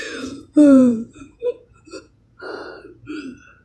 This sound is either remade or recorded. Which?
remade